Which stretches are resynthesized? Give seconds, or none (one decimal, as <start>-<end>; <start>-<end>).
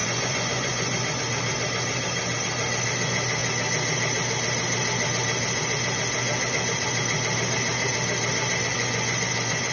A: 0.0-1.2; 8.7-9.7